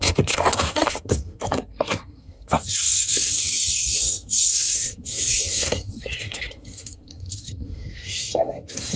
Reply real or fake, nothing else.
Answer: fake